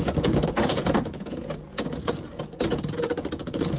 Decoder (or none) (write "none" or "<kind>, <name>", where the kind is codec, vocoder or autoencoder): vocoder, Vocos